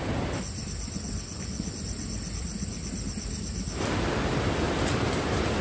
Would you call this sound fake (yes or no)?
no